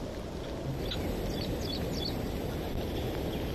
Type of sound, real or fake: real